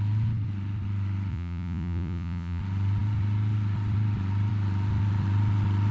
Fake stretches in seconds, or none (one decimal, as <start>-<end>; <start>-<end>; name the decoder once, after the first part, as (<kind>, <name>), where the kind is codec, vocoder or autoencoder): 1.3-2.6 (vocoder, Vocos)